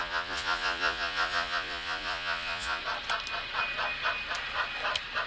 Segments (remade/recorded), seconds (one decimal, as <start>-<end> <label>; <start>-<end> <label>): 0.0-2.8 remade; 2.8-5.3 recorded